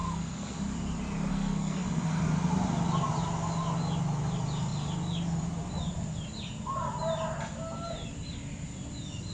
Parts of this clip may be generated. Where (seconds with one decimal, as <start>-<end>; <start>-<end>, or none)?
0.0-0.6; 1.3-2.2